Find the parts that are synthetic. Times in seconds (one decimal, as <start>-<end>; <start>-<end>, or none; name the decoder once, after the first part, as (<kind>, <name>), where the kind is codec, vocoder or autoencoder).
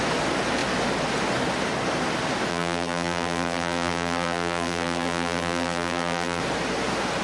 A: 2.5-6.4 (vocoder, BigVGAN v2)